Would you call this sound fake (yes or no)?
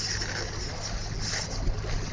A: no